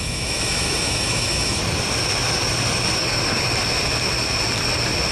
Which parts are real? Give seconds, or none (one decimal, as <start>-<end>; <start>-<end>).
1.6-5.1